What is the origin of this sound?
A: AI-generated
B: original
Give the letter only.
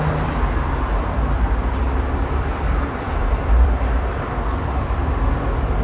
A